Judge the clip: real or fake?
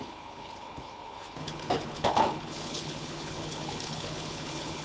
fake